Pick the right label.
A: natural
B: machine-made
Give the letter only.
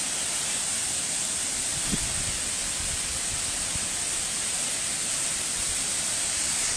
A